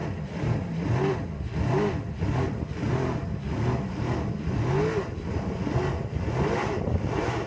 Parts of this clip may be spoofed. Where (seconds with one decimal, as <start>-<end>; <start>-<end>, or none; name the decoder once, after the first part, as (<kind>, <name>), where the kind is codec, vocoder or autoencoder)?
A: none